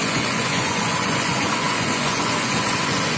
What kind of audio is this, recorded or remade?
remade